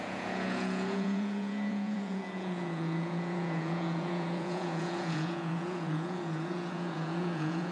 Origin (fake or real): fake